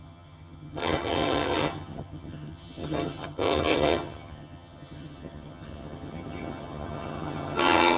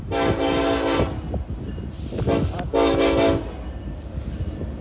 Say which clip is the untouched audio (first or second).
second